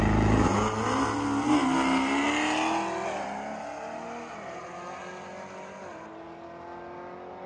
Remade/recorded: recorded